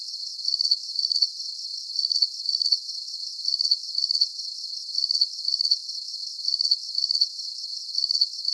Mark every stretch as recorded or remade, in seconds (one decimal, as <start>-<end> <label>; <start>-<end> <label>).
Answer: 0.0-8.5 recorded